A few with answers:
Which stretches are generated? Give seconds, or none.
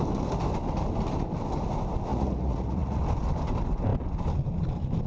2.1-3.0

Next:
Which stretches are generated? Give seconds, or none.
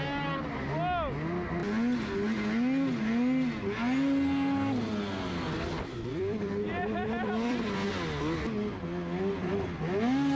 6.1-7.9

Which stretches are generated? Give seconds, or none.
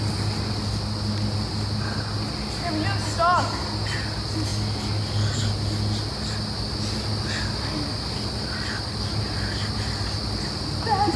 none